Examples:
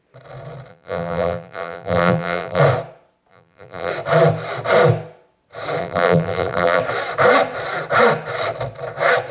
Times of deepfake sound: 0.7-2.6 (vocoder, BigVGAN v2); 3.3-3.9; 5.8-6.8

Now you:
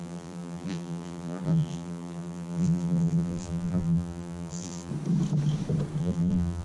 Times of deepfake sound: 0.0-4.9 (vocoder, BigVGAN v2); 6.0-6.6

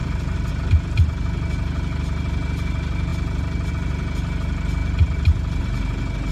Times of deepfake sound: 0.0-0.5 (vocoder, BigVGAN v2)